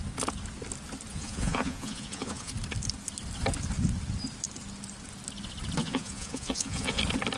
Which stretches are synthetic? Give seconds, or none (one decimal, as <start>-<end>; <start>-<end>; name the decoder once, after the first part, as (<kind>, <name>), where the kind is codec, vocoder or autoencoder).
1.1-2.5 (vocoder, Vocos); 5.8-7.0